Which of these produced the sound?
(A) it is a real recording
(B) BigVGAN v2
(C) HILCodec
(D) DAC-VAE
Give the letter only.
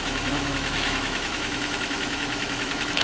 D